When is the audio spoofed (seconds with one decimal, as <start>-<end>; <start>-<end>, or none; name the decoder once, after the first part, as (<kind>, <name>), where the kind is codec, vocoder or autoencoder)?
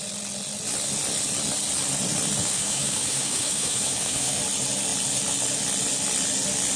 2.4-4.4 (autoencoder, DAC-VAE)